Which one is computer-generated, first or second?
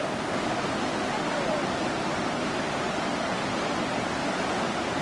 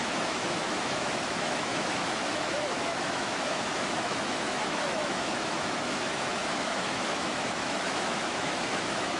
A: second